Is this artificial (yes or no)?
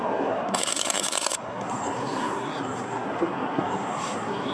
yes